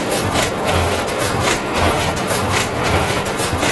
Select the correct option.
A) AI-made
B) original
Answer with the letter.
A